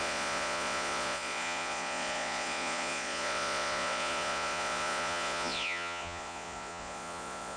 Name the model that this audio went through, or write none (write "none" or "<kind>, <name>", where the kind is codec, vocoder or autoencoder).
vocoder, Vocos